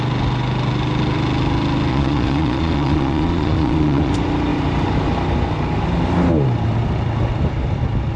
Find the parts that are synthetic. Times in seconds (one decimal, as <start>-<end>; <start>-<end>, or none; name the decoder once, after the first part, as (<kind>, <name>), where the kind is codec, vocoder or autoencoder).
1.9-4.1 (vocoder, Vocos)